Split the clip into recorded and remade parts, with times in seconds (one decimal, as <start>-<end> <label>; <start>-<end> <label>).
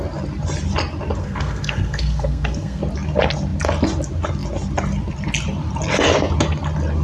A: 0.0-1.2 recorded; 1.2-2.8 remade; 2.8-7.0 recorded